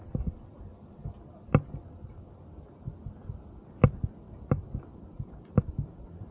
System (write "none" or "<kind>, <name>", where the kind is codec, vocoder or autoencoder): none